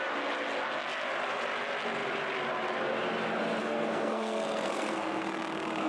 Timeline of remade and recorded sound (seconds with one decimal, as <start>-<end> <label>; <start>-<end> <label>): 0.0-3.6 recorded; 3.6-5.9 remade